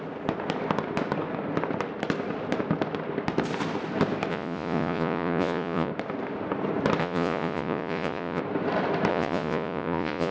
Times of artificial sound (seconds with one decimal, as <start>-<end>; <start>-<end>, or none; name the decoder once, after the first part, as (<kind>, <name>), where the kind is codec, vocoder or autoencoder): 4.3-5.9 (vocoder, Vocos); 7.0-8.4; 9.1-10.3